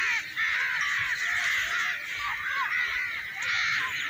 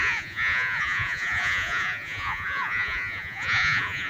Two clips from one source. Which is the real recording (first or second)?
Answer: first